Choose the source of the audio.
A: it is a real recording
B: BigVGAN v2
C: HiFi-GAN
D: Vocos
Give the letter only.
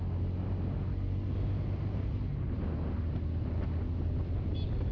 A